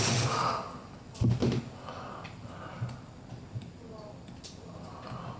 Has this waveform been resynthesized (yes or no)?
no